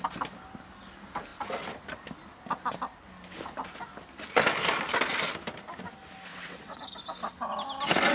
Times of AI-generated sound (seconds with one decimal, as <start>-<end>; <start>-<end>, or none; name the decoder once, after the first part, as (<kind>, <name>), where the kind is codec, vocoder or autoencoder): 6.3-6.8 (vocoder, WaveNeXt)

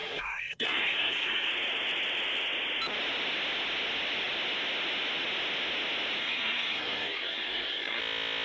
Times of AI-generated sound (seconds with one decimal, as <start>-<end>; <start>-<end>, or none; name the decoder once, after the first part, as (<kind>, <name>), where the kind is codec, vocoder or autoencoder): 0.0-1.5 (codec, SNAC); 6.2-8.0